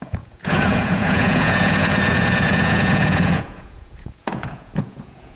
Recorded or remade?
remade